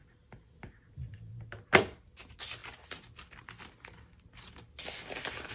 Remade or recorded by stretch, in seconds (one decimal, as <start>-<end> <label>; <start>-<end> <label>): 0.0-5.5 recorded